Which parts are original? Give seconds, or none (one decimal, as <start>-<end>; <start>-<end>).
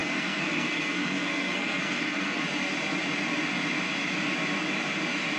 2.4-5.4